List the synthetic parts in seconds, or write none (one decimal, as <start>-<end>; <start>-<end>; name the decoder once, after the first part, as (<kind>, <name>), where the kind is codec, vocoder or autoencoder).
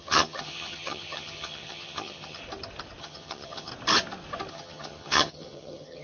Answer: 0.0-2.4 (vocoder, HiFi-GAN); 3.0-3.7; 4.5-6.0